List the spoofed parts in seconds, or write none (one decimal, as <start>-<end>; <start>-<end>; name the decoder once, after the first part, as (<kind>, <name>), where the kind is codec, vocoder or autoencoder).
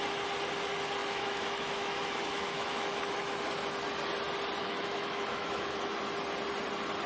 1.0-3.4 (autoencoder, DAC-VAE); 4.6-6.0